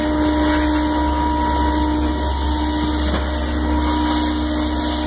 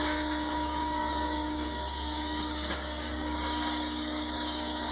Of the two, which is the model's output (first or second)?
second